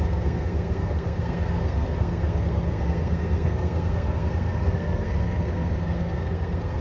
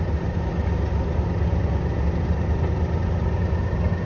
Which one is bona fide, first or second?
second